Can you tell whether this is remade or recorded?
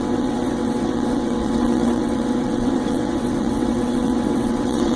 remade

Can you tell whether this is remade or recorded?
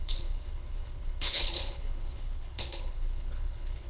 remade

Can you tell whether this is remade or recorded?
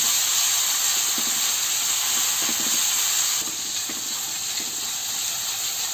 recorded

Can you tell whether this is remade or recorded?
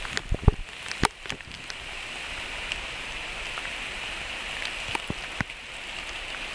recorded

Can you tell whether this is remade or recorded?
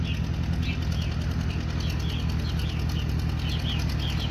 recorded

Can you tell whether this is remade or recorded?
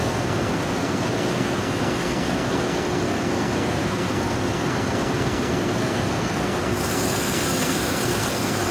remade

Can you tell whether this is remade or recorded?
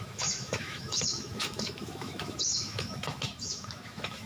remade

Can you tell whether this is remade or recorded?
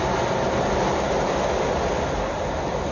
recorded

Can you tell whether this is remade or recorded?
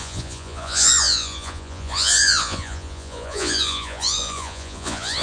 remade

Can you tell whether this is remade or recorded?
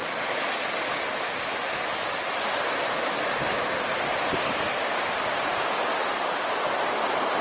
recorded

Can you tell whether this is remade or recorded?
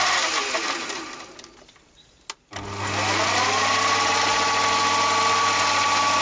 recorded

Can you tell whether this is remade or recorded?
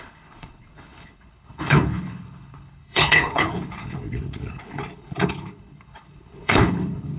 remade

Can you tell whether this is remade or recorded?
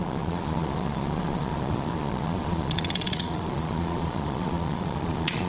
remade